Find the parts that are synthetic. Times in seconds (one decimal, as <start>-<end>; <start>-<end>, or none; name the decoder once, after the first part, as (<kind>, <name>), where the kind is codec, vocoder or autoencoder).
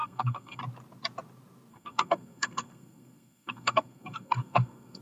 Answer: 0.0-0.6 (codec, SNAC); 1.7-5.0